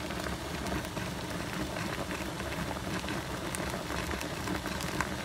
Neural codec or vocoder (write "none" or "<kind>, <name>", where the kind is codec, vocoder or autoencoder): none